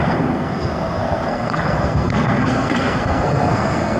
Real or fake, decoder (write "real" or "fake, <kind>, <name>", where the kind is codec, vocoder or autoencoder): fake, codec, SNAC